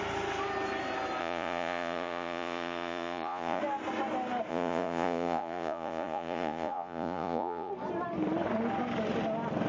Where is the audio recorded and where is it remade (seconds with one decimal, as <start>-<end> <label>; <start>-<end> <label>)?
0.0-1.2 recorded; 1.2-3.6 remade; 3.6-4.5 recorded; 4.5-7.7 remade; 7.7-9.7 recorded